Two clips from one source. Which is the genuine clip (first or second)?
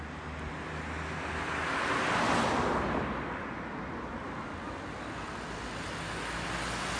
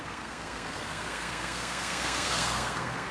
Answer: first